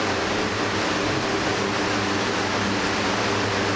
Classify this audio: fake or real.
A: real